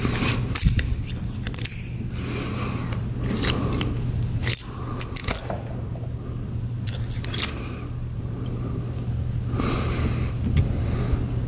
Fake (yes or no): no